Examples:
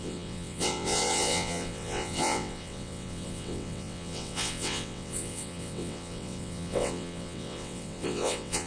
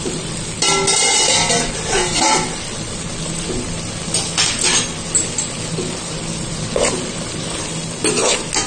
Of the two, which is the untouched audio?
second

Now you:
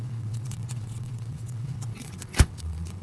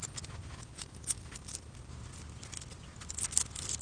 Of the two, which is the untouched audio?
second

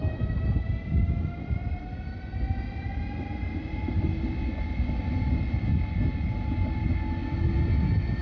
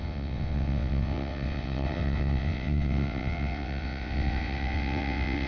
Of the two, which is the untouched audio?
first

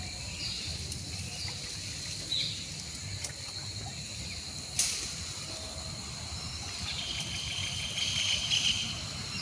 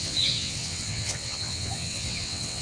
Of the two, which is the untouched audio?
first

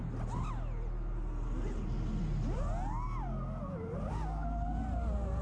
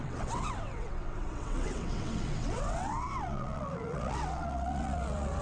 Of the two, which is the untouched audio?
first